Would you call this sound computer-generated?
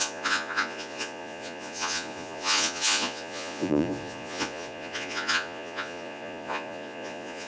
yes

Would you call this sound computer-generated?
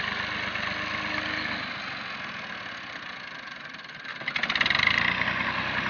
no